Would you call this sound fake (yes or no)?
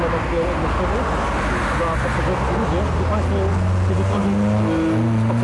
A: no